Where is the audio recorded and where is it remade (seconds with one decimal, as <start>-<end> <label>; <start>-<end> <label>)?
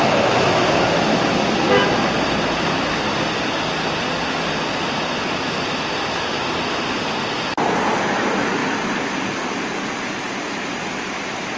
0.0-11.6 recorded